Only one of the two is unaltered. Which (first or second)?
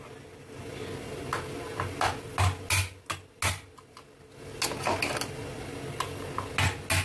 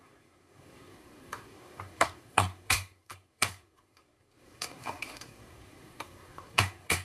first